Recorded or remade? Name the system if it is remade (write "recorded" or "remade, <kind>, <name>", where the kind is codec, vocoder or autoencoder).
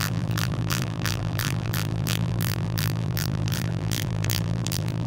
remade, vocoder, BigVGAN v2